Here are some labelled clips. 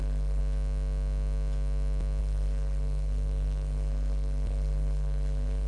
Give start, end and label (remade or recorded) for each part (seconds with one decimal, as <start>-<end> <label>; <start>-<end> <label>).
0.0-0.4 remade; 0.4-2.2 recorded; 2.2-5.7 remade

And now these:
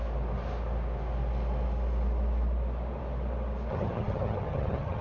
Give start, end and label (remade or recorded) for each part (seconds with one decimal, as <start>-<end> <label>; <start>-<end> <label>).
0.0-3.7 recorded; 3.7-5.0 remade

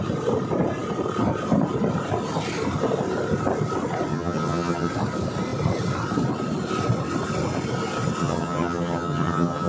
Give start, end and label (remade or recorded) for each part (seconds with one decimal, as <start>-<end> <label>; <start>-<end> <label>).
0.0-4.1 recorded; 4.1-4.9 remade; 4.9-8.2 recorded; 8.2-9.7 remade

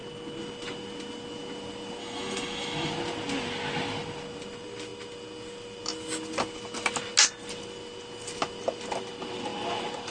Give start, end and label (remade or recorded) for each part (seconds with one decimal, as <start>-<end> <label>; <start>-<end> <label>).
0.0-2.0 recorded; 2.0-2.9 remade; 2.9-10.1 recorded

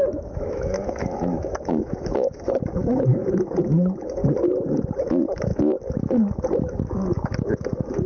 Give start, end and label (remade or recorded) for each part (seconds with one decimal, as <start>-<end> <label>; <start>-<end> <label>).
0.0-4.2 remade; 4.2-5.0 recorded; 5.0-5.5 remade; 5.5-6.0 recorded; 6.0-8.1 remade

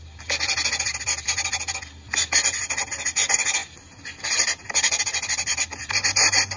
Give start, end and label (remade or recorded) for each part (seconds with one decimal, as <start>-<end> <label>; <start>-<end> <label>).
0.0-6.6 recorded

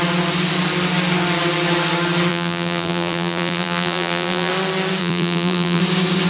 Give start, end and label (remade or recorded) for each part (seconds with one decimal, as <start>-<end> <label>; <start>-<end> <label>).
0.0-2.3 recorded; 2.3-4.5 remade; 4.5-5.0 recorded; 5.0-5.8 remade; 5.8-6.3 recorded

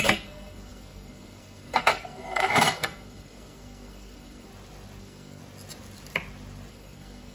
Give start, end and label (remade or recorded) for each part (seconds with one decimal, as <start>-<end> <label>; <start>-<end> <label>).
0.0-4.5 remade; 4.5-5.0 recorded; 5.0-5.4 remade; 5.4-6.7 recorded; 6.7-7.3 remade